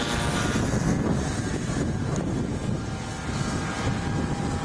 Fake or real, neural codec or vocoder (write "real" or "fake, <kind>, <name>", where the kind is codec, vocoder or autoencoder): real